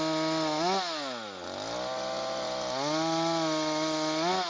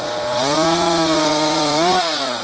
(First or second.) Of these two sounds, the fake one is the second